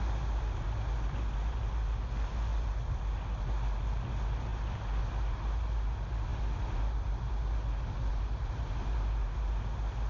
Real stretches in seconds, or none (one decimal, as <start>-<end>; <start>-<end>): 0.0-10.1